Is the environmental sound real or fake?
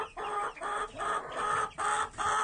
real